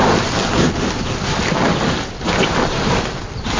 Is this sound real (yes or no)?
yes